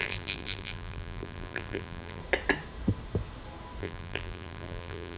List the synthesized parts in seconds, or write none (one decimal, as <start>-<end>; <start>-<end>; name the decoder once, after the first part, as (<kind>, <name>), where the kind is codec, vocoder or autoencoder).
0.0-2.2 (vocoder, BigVGAN v2); 3.8-5.2